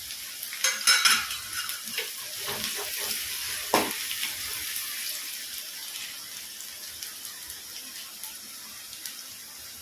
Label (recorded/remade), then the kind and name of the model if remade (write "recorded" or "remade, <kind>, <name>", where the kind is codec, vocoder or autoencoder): recorded